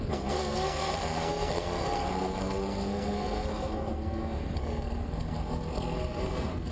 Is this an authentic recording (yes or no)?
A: no